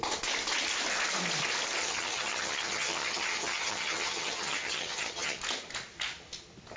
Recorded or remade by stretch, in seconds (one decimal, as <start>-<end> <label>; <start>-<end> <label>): 0.0-1.8 recorded; 1.8-5.4 remade; 5.4-6.8 recorded